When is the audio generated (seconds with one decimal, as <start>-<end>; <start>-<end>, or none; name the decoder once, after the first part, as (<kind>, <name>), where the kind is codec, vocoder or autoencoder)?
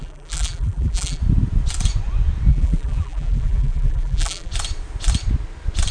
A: 0.0-1.2 (vocoder, BigVGAN v2); 2.5-4.5